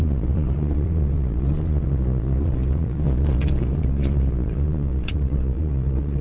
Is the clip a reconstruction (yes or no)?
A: yes